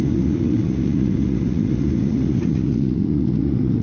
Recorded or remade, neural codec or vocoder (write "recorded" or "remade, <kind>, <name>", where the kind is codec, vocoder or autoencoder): remade, vocoder, Vocos